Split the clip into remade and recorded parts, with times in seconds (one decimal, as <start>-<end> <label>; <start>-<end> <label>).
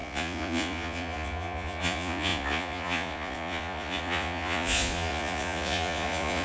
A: 0.0-6.4 remade